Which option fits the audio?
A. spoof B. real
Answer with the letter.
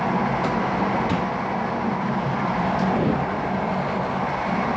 A